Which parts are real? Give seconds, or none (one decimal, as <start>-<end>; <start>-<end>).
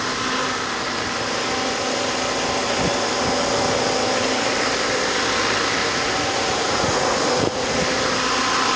0.0-5.8; 7.8-8.8